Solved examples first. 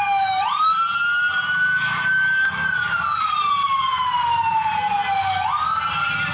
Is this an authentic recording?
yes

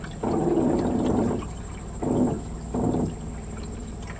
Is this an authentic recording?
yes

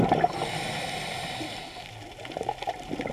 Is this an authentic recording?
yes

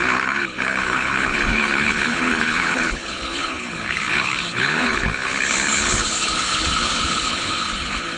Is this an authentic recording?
no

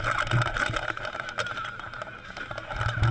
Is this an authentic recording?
yes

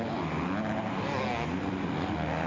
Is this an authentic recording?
yes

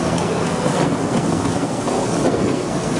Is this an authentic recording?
no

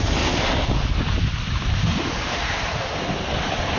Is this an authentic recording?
yes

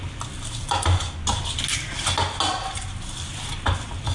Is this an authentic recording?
yes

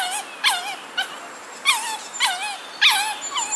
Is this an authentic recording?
yes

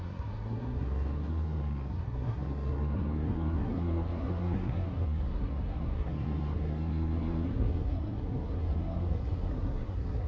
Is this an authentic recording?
no